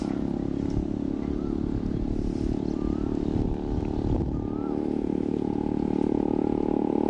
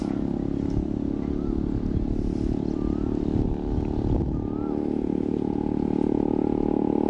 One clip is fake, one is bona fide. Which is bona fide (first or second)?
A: second